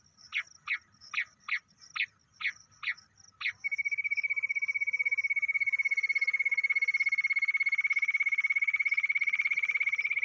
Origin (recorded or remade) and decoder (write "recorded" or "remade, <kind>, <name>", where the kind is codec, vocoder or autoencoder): recorded